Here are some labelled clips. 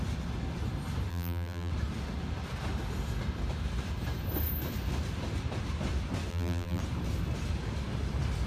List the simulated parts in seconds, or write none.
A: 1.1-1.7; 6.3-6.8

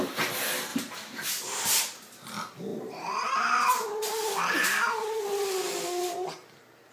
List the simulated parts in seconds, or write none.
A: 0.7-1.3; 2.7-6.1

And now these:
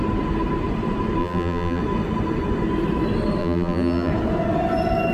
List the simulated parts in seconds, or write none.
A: 1.2-1.8; 3.4-4.1

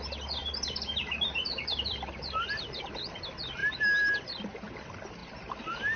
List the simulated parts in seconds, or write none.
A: 0.4-2.9; 3.6-4.2; 5.2-6.0